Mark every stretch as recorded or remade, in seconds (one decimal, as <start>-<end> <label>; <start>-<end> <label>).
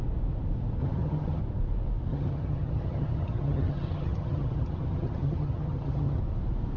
0.0-0.8 recorded; 0.8-1.4 remade; 1.4-2.1 recorded; 2.1-6.2 remade; 6.2-6.8 recorded